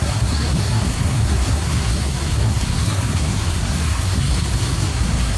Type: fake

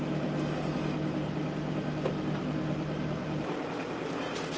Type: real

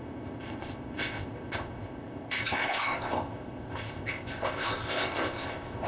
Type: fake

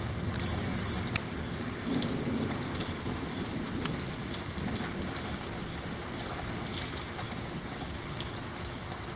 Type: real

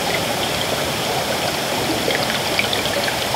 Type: real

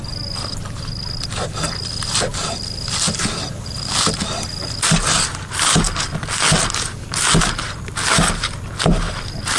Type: real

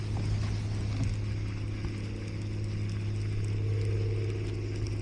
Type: real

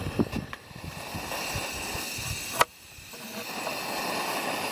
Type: real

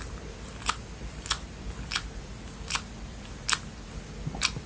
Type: real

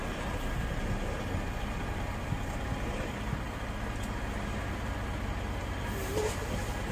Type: real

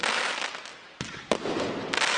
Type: real